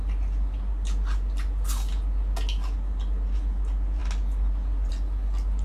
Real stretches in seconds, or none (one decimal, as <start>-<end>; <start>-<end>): 0.0-5.6